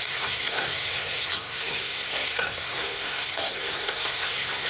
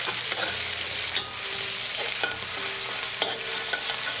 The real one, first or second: second